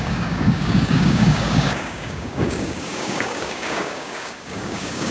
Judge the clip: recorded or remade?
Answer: remade